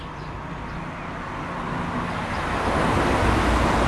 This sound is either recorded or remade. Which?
recorded